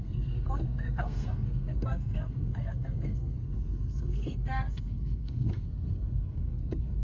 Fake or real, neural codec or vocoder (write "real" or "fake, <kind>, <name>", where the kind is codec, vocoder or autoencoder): fake, codec, SNAC